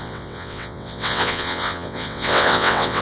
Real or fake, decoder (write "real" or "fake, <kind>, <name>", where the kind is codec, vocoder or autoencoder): fake, vocoder, WaveNeXt